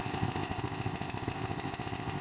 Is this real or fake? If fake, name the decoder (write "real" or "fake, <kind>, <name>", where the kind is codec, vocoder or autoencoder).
fake, codec, ZipCodec